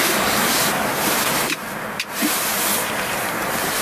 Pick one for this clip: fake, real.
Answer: fake